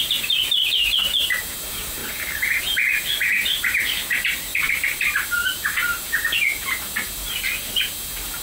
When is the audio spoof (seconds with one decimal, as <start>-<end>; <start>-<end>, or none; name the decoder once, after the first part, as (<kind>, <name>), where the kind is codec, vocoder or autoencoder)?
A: 2.0-2.6 (vocoder, BigVGAN v2)